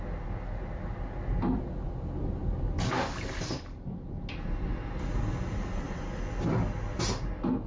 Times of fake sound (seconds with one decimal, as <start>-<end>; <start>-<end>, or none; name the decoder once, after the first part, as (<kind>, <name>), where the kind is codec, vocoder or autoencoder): none